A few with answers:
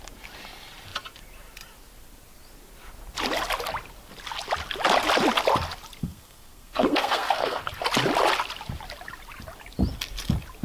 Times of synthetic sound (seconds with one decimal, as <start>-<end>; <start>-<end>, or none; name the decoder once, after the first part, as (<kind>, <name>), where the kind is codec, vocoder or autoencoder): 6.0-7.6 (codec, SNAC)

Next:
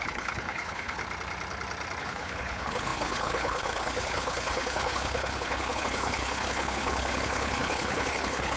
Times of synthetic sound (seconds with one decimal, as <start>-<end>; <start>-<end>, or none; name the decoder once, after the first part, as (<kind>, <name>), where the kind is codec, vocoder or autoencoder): 0.0-1.0 (codec, HILCodec); 2.0-8.6

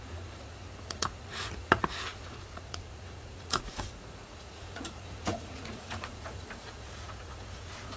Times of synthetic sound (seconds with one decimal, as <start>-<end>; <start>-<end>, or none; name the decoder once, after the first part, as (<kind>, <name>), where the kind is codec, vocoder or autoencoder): 0.0-8.0 (vocoder, Vocos)

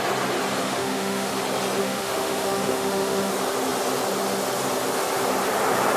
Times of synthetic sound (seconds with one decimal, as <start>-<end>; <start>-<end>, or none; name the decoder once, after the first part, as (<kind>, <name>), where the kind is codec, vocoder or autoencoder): 0.6-1.3 (autoencoder, DAC-VAE); 1.8-3.3

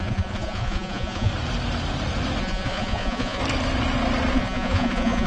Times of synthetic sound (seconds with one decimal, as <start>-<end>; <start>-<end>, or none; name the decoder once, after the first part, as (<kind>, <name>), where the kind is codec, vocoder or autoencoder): 0.0-1.3 (vocoder, Vocos); 2.4-3.4; 4.3-5.3